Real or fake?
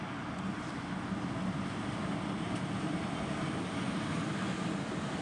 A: real